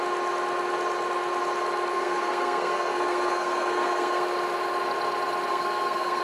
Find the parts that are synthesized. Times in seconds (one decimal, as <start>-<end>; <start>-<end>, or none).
1.9-4.2; 5.5-6.2